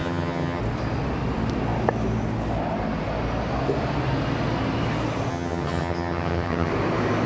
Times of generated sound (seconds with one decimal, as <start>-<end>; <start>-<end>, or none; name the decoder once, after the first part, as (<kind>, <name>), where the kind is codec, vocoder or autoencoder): 0.0-0.6 (vocoder, HiFi-GAN); 5.3-6.7